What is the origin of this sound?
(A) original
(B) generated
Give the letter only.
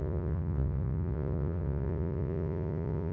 B